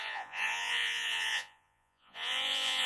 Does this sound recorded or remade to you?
remade